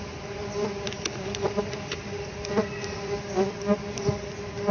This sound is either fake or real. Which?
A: real